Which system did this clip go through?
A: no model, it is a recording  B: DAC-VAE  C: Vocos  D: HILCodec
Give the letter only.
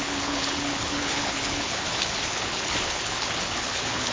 D